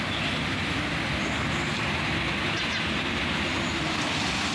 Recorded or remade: recorded